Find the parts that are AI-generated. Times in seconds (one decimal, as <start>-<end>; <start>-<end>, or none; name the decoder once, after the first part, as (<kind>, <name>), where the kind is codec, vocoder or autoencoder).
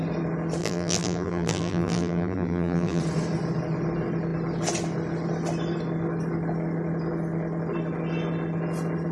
0.6-3.0 (vocoder, BigVGAN v2)